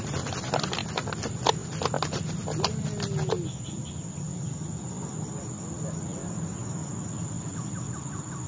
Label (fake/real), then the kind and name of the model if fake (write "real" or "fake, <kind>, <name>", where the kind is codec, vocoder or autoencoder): real